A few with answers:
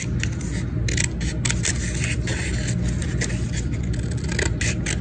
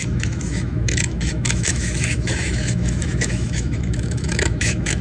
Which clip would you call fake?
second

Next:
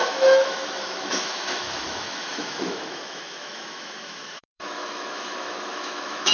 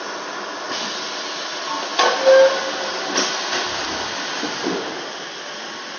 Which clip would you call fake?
first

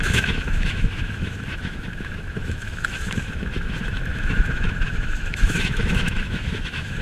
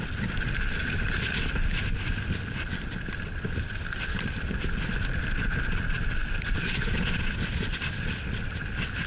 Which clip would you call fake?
first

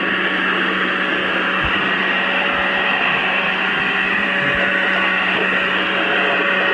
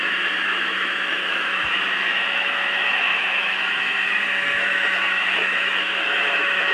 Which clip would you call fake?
second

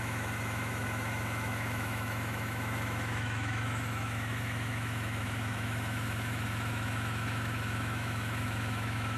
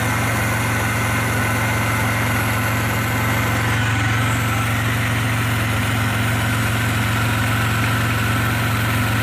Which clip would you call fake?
first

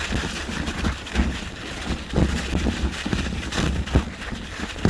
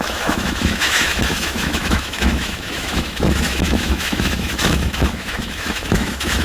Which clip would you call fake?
second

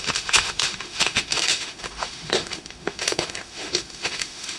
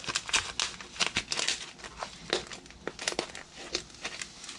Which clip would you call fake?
first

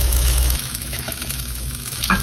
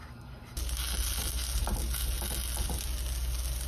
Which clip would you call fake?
first